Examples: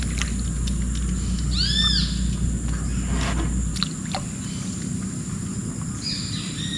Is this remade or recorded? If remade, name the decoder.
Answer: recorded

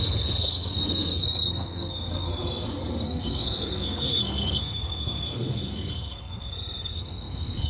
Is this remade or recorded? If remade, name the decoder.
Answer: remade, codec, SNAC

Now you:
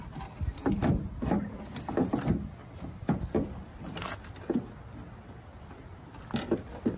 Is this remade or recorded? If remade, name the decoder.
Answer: recorded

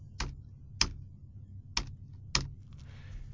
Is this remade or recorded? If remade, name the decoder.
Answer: recorded